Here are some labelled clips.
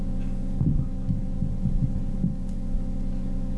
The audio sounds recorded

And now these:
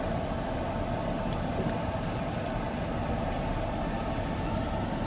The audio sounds recorded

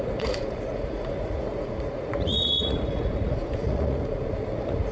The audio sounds remade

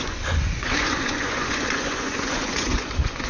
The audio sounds remade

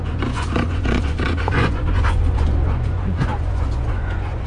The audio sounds remade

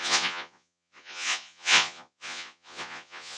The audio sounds remade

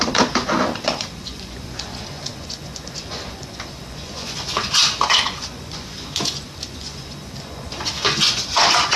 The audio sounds remade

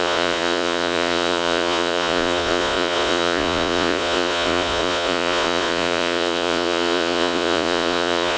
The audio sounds remade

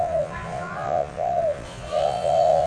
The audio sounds remade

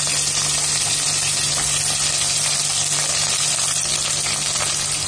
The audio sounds recorded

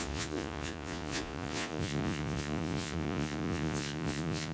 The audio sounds remade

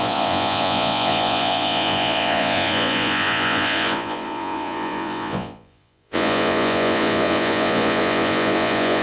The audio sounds remade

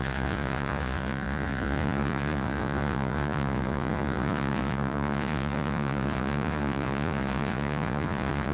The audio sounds remade